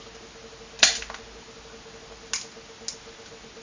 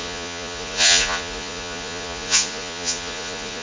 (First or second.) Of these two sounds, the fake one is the second